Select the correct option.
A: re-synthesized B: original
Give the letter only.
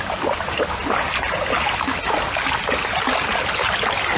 B